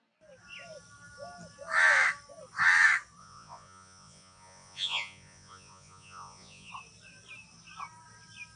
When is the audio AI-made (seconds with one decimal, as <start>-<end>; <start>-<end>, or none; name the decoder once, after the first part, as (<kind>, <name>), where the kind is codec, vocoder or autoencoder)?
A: 3.2-6.7 (vocoder, Vocos)

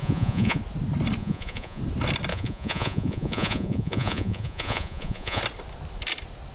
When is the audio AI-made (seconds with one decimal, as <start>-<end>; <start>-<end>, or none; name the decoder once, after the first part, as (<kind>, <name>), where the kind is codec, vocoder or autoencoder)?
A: 0.0-0.6 (vocoder, Vocos); 1.2-1.8; 2.3-5.4

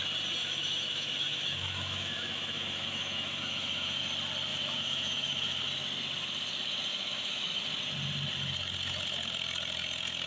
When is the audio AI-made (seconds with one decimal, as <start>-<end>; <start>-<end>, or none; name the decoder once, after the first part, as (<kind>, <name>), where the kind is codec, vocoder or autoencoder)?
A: 0.4-4.0 (autoencoder, DAC-VAE); 4.5-5.6; 6.9-7.6

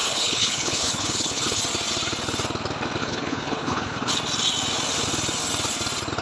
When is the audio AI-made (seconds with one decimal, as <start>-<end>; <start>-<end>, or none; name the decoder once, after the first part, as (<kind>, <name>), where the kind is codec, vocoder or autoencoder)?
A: 0.0-1.6 (codec, HILCodec); 3.0-4.1

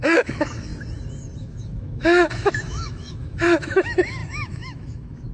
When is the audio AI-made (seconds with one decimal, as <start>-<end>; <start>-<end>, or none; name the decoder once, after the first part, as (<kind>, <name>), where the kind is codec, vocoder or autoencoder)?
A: 0.0-0.7 (autoencoder, DAC-VAE); 1.4-5.3

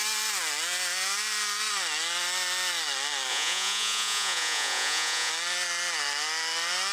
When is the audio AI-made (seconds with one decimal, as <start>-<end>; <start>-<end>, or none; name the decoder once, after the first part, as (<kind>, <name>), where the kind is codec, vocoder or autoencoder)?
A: 3.3-5.3 (vocoder, Vocos)